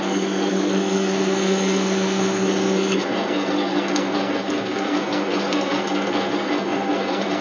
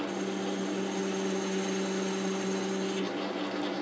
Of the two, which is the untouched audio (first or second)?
second